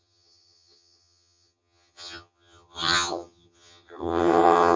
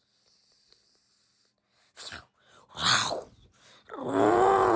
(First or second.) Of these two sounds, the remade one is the first